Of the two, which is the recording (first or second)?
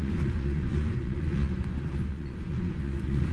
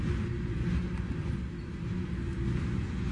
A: second